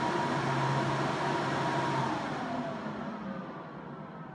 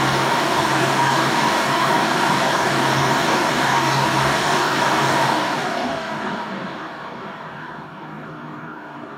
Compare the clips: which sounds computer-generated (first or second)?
second